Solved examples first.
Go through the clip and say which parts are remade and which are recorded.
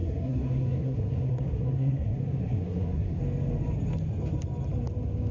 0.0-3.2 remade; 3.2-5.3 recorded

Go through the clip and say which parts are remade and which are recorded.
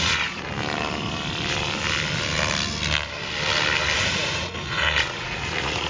0.0-0.5 remade; 0.5-4.0 recorded; 4.0-5.9 remade